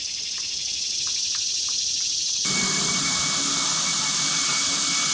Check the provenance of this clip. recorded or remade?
remade